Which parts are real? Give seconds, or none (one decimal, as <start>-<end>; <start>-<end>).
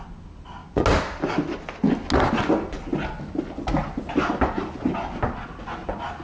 0.0-6.2